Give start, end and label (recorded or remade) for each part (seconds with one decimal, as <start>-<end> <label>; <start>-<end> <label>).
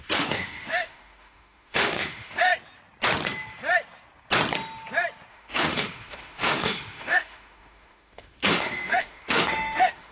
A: 0.0-2.5 remade; 2.5-5.3 recorded; 5.3-10.1 remade